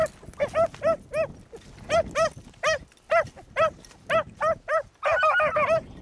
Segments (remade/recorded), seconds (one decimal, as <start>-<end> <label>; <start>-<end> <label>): 0.0-6.0 recorded